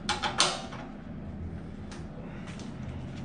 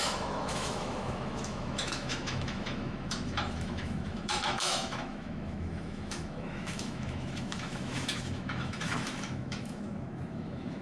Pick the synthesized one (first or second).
second